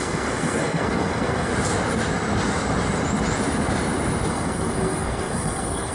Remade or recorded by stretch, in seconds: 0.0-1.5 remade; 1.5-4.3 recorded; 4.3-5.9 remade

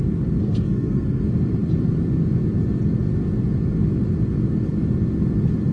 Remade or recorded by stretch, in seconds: 0.0-0.4 recorded; 0.4-1.2 remade; 1.2-5.7 recorded